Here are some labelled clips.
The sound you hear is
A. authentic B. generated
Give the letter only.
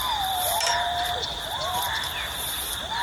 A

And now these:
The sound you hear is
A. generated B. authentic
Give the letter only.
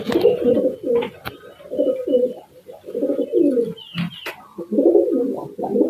B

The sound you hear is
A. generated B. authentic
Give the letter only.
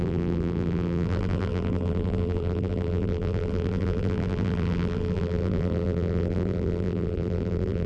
A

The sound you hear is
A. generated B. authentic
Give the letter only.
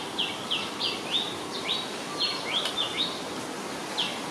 B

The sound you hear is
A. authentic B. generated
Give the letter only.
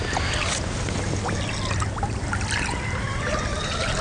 A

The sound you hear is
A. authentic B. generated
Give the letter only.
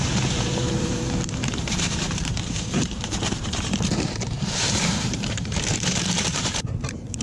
B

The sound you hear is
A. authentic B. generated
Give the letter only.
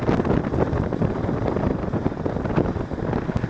A